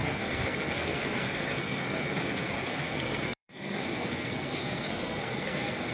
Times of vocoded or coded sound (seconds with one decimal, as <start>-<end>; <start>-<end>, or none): 0.0-5.9